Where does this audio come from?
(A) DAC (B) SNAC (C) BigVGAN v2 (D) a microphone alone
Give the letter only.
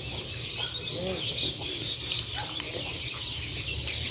D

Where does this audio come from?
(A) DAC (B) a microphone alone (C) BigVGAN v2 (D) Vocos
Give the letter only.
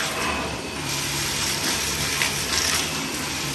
C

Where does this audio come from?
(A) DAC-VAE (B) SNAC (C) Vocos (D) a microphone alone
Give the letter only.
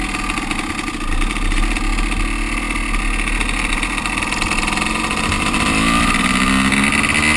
D